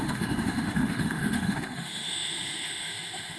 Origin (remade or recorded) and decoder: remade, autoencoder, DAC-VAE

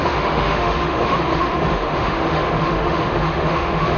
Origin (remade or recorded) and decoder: remade, autoencoder, DAC-VAE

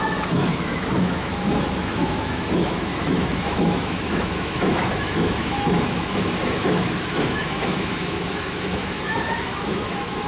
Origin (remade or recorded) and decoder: remade, autoencoder, DAC-VAE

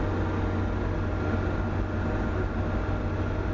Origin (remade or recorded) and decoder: recorded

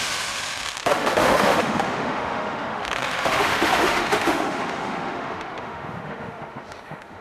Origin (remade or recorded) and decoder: remade, autoencoder, DAC-VAE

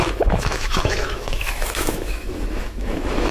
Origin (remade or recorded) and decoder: remade, autoencoder, DAC-VAE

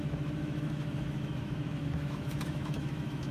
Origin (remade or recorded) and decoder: remade, autoencoder, DAC-VAE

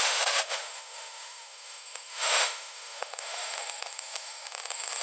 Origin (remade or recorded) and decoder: remade, autoencoder, DAC-VAE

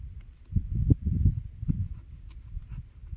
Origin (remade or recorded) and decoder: recorded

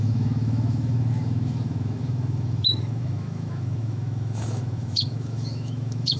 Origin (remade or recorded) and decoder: remade, autoencoder, DAC-VAE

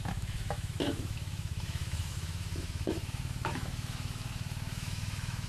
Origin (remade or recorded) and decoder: remade, autoencoder, DAC-VAE